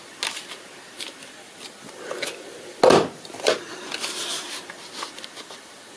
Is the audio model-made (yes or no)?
no